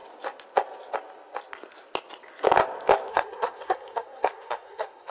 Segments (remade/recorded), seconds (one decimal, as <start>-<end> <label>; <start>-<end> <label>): 0.0-3.1 recorded; 3.1-5.1 remade